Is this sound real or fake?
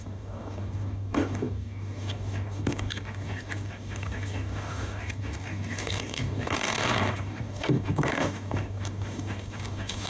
fake